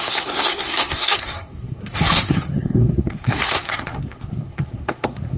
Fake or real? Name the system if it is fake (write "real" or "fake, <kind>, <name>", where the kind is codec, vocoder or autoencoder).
fake, codec, SNAC